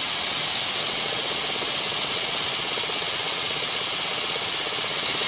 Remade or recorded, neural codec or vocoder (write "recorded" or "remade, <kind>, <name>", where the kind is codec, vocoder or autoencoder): remade, vocoder, WaveNeXt